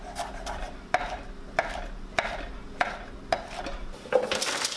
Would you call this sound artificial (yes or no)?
yes